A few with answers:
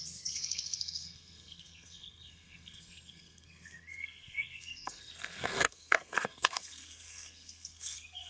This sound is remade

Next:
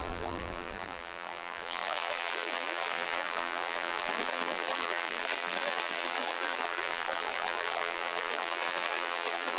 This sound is remade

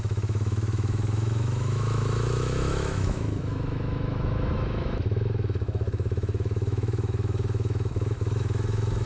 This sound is remade